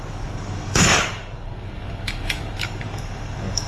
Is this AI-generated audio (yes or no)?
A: yes